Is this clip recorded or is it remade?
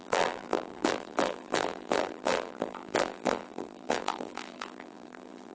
remade